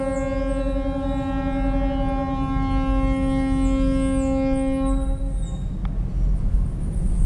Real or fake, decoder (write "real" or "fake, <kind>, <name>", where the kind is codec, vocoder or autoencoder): real